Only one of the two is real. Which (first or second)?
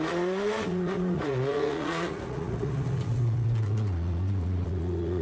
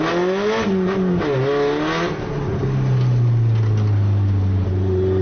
second